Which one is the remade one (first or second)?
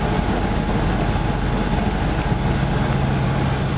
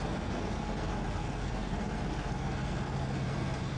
second